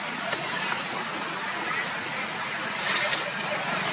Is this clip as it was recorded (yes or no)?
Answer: no